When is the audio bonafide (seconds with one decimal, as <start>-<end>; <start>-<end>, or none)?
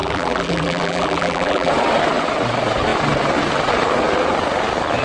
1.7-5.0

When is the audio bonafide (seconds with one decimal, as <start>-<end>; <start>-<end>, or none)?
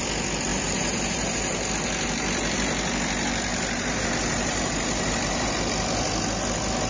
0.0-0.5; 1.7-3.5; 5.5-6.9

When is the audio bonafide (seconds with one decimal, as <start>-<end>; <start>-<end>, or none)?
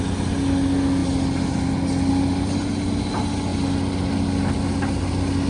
0.0-5.5